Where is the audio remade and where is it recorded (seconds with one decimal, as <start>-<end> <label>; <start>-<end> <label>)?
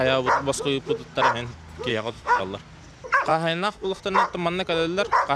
0.0-1.9 recorded; 1.9-2.4 remade; 2.4-3.3 recorded; 3.3-4.0 remade; 4.0-5.4 recorded